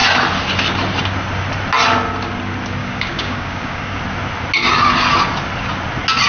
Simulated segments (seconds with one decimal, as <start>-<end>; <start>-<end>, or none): 2.8-4.0